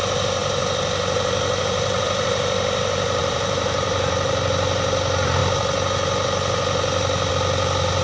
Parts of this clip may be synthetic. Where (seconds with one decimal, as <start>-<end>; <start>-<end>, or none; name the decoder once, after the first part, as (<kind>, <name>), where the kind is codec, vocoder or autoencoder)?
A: 3.2-4.3 (vocoder, BigVGAN v2)